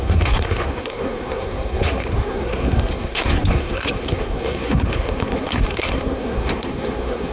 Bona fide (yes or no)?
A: no